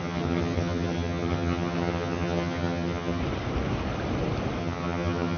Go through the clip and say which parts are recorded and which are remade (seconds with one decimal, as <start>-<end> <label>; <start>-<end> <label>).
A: 0.0-3.2 remade; 3.2-4.6 recorded; 4.6-5.4 remade